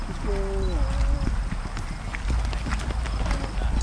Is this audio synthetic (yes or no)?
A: no